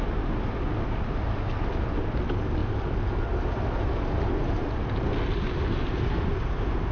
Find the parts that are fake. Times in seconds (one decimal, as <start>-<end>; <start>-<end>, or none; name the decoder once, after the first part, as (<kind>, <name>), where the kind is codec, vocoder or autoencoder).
none